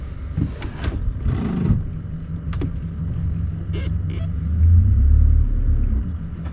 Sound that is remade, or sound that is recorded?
recorded